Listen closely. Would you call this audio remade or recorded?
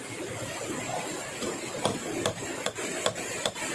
recorded